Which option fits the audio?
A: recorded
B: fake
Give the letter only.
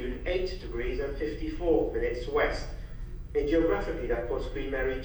B